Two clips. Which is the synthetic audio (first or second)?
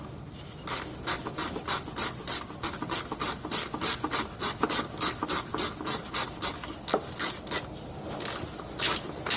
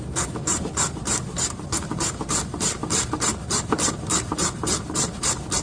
second